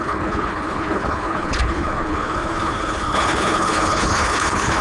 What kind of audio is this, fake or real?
fake